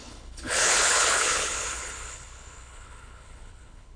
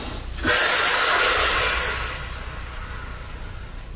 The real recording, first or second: second